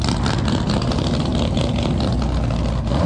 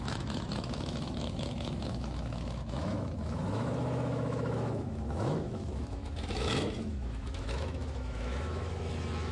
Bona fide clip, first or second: first